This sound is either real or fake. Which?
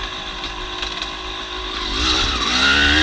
real